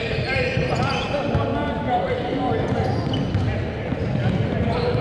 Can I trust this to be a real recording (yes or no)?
yes